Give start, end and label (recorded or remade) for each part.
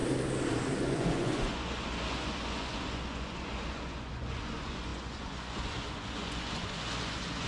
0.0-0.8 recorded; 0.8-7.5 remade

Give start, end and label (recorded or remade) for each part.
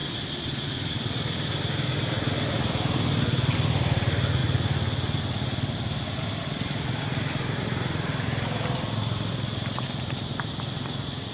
0.0-11.3 recorded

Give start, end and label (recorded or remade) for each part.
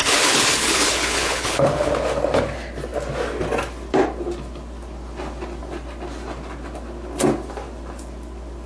0.0-1.9 remade; 1.9-8.7 recorded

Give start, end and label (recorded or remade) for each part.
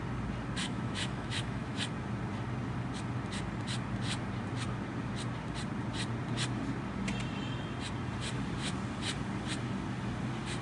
0.0-0.6 recorded; 0.6-1.8 remade; 1.8-10.6 recorded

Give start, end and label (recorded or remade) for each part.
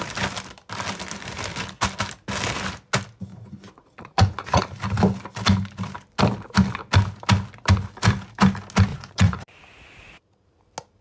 0.0-3.3 recorded; 3.3-4.6 remade; 4.6-8.9 recorded; 8.9-10.6 remade; 10.6-11.0 recorded